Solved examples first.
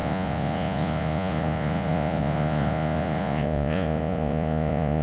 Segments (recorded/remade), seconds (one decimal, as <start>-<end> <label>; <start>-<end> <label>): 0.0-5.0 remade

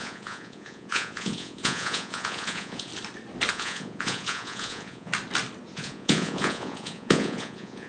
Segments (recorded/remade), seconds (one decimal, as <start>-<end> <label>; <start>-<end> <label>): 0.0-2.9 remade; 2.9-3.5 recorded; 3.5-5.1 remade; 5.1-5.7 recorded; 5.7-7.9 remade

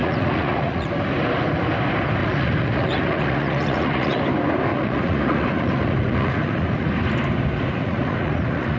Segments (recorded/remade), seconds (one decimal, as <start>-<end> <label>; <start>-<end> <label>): 0.0-0.9 remade; 0.9-2.2 recorded; 2.2-4.2 remade; 4.2-4.7 recorded; 4.7-6.9 remade; 6.9-7.8 recorded; 7.8-8.8 remade